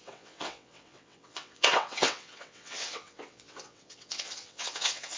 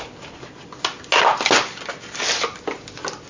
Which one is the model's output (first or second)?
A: first